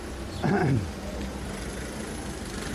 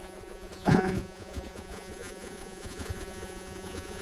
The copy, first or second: second